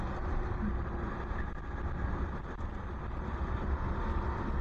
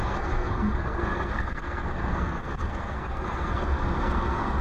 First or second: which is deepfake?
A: second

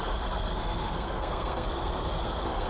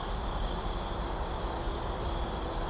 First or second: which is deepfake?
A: first